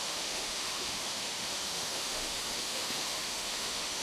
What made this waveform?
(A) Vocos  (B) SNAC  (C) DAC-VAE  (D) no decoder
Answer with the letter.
C